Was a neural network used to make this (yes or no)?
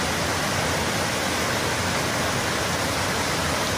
no